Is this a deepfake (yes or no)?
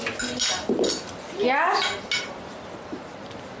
no